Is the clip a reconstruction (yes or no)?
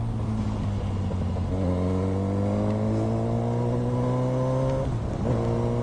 no